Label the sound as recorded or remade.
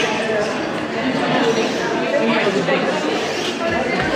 recorded